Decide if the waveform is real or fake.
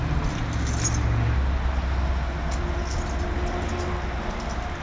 real